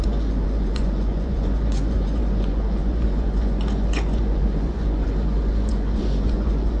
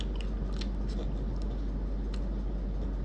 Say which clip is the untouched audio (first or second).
second